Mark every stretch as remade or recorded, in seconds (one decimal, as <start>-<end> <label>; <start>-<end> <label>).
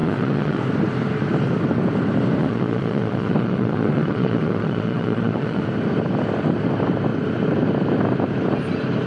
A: 0.0-0.6 remade; 0.6-2.4 recorded; 2.4-5.6 remade; 5.6-9.1 recorded